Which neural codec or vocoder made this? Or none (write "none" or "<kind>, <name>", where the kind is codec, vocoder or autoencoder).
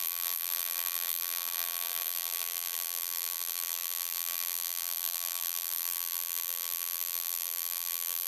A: vocoder, BigVGAN v2